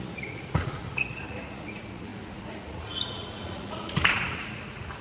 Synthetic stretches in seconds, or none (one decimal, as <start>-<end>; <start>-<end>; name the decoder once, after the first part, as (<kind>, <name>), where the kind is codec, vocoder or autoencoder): 0.0-5.0 (vocoder, Vocos)